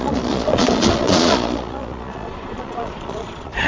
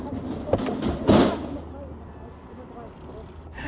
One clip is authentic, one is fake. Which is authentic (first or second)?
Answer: second